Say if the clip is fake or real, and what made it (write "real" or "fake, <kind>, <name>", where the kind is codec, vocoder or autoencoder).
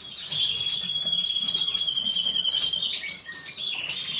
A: real